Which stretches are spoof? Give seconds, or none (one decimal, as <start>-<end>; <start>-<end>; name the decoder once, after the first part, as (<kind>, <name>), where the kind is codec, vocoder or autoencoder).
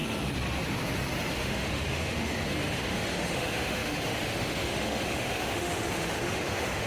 1.3-6.9 (autoencoder, DAC-VAE)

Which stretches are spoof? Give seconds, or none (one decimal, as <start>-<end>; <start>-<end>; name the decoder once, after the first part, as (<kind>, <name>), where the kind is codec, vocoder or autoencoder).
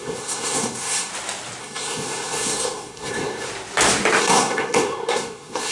0.0-1.1 (codec, SNAC); 1.6-3.5; 4.2-5.7